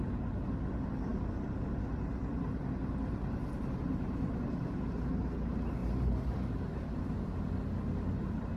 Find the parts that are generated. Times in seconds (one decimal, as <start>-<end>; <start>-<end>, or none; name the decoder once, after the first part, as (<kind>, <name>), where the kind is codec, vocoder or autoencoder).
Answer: 5.8-7.0 (vocoder, BigVGAN v2)